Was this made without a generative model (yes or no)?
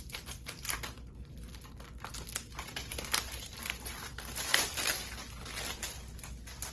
yes